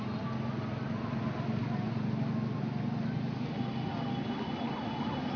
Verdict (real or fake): real